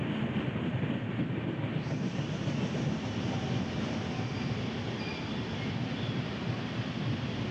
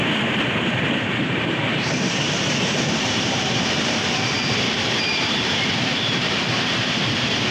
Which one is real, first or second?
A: first